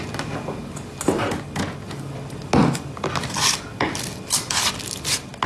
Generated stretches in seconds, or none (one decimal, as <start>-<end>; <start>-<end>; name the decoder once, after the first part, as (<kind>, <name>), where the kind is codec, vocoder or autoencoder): none